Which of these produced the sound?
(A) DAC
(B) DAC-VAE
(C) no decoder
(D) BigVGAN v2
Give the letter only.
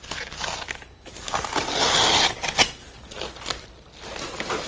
C